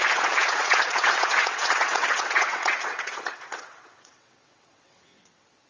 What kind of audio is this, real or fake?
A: fake